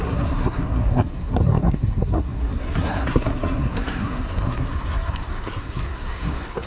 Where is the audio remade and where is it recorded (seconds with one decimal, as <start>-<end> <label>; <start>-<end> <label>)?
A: 0.0-6.7 remade